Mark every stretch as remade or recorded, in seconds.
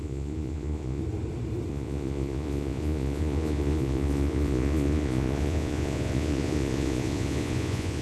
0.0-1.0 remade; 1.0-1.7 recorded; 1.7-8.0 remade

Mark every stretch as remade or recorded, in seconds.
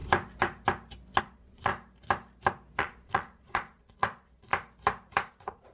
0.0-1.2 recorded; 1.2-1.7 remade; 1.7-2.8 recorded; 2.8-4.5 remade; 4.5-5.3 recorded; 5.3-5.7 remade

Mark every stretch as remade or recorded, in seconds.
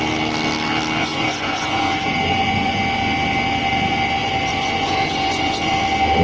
0.0-1.0 recorded; 1.0-2.8 remade; 2.8-4.2 recorded; 4.2-5.7 remade; 5.7-6.2 recorded